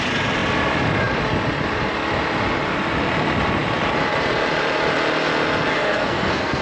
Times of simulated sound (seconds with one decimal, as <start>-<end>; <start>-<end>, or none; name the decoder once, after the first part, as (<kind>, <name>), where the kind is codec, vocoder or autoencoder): 5.7-6.6 (codec, SNAC)